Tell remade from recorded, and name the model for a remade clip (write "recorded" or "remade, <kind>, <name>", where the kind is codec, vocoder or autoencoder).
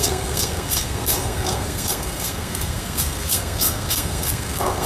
remade, codec, SNAC